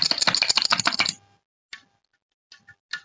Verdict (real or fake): real